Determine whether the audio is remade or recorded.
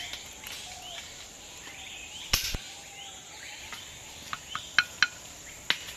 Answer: recorded